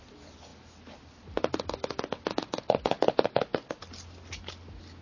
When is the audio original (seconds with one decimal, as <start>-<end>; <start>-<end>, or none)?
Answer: 0.0-5.0